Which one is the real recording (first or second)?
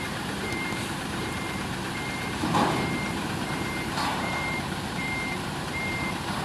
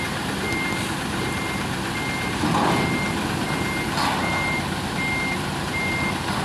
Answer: second